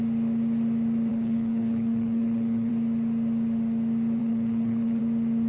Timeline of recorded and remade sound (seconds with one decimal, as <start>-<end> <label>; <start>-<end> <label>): 0.0-1.1 recorded; 1.1-2.7 remade; 2.7-4.2 recorded; 4.2-5.0 remade; 5.0-5.5 recorded